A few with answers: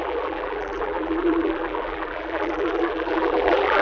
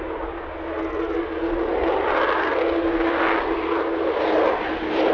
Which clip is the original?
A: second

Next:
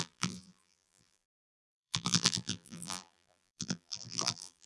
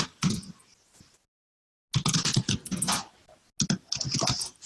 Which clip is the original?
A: second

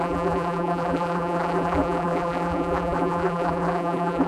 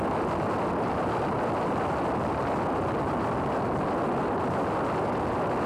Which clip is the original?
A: second